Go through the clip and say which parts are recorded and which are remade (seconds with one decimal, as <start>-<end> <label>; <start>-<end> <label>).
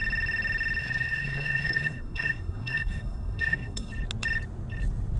0.0-0.8 recorded; 0.8-3.9 remade; 3.9-5.2 recorded